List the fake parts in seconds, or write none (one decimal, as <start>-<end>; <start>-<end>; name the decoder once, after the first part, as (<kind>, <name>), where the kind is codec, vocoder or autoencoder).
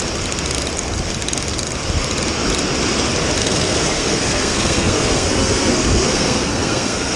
3.4-7.2 (codec, SNAC)